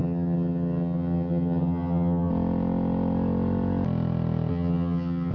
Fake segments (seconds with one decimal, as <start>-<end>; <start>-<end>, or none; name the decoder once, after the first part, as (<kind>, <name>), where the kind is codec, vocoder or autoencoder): 0.0-2.3 (vocoder, HiFi-GAN); 4.5-5.3